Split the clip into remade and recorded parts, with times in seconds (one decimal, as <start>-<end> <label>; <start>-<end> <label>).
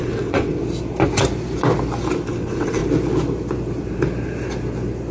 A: 0.0-0.6 remade; 0.6-2.3 recorded; 2.3-2.8 remade; 2.8-5.1 recorded